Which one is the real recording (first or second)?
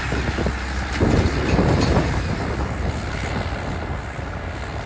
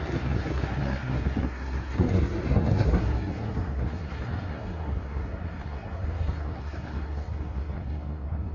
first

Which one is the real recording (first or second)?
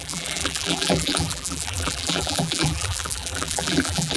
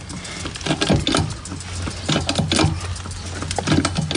second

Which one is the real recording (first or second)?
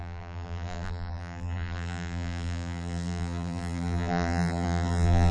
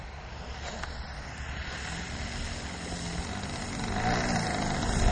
second